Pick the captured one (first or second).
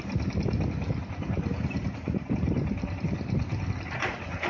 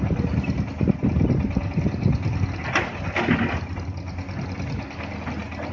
second